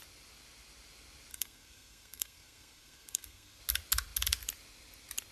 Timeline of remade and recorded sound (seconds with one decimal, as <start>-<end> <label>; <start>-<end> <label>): 0.0-1.3 recorded; 1.3-3.6 remade; 3.6-5.3 recorded